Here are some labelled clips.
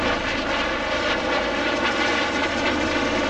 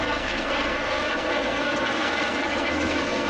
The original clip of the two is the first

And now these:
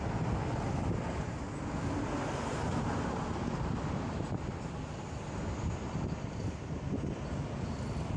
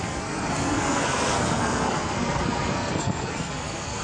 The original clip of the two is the first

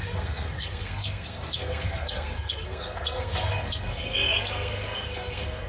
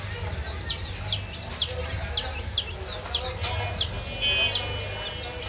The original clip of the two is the second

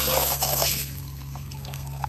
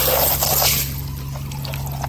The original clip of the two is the second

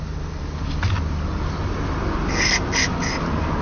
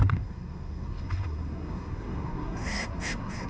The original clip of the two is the first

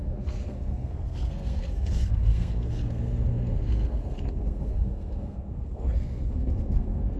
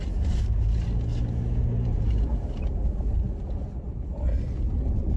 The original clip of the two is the second